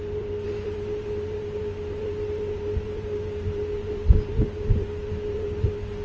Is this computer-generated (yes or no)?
yes